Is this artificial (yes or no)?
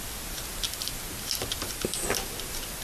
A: no